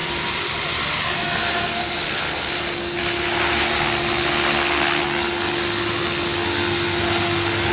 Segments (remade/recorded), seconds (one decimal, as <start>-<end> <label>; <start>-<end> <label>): 0.0-7.7 recorded